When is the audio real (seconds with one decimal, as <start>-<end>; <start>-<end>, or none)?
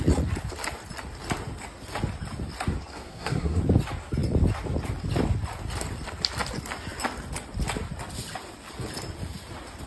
0.0-2.9; 3.6-9.9